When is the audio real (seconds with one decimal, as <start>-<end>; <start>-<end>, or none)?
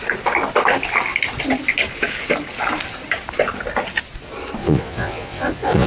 0.0-4.6